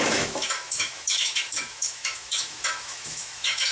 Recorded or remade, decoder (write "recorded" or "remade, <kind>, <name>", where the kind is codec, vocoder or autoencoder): remade, autoencoder, DAC-VAE